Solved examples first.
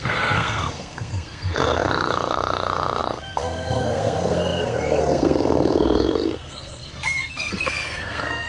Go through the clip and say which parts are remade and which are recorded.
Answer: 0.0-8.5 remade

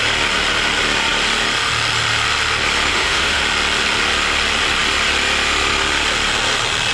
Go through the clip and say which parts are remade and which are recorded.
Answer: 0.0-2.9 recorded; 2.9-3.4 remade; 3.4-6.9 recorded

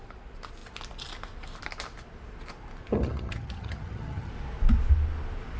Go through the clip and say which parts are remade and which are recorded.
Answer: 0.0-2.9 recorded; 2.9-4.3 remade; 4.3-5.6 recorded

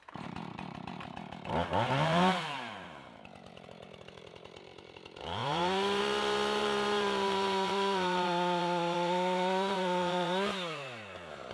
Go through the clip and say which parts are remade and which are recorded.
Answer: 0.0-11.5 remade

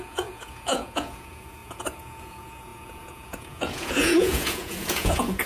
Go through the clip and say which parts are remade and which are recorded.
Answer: 0.0-5.5 remade

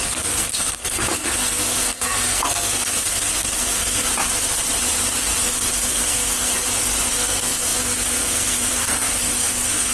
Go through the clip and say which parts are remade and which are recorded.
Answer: 0.0-4.1 remade; 4.1-5.4 recorded; 5.4-6.5 remade; 6.5-7.1 recorded; 7.1-9.9 remade

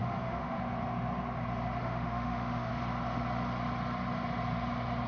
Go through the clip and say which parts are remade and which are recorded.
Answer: 0.0-0.6 remade; 0.6-1.8 recorded; 1.8-2.7 remade; 2.7-5.1 recorded

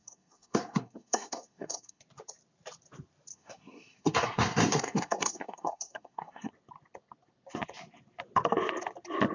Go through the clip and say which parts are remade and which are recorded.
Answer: 0.0-2.0 remade; 2.0-3.3 recorded; 3.3-6.5 remade; 6.5-9.3 recorded